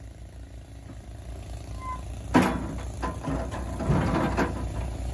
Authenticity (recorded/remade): recorded